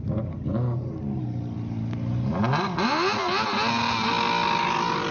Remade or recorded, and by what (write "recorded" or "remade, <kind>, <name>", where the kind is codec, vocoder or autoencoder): recorded